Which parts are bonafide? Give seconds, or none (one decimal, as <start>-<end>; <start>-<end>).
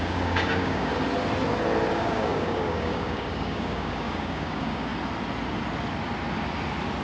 0.9-1.9; 4.9-7.0